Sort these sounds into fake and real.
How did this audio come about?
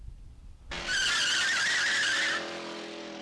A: real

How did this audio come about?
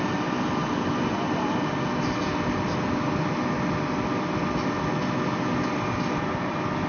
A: real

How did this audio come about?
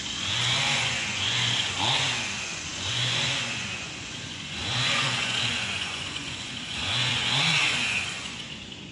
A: fake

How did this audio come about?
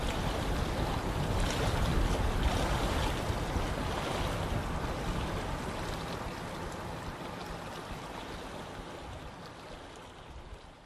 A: real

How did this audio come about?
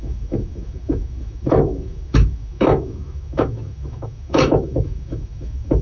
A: fake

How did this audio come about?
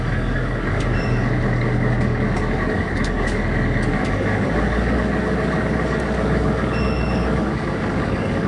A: fake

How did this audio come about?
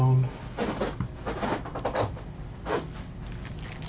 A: real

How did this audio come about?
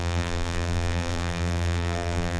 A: fake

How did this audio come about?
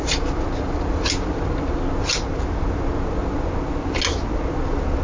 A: real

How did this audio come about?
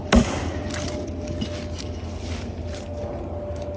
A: real